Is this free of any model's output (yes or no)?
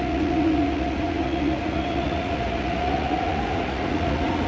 no